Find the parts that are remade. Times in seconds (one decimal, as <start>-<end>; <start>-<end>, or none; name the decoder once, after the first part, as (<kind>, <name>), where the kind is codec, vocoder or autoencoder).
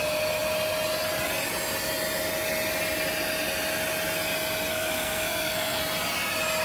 4.7-5.8 (codec, SNAC)